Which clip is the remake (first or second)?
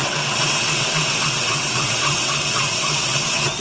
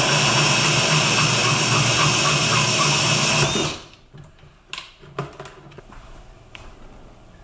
first